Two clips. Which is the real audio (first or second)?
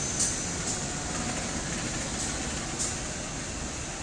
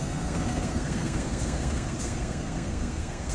first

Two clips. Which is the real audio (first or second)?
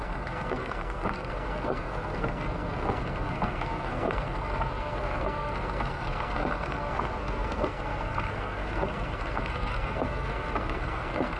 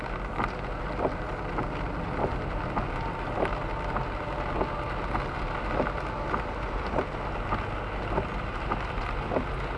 second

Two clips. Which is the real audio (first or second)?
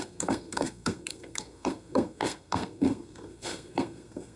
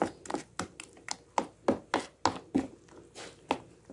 second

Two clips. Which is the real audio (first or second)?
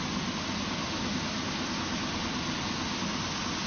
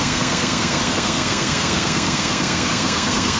first